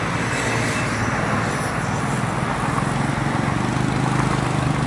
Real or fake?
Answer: real